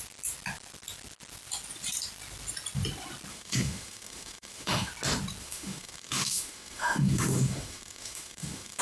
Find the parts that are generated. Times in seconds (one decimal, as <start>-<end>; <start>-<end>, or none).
3.3-4.9; 5.4-8.8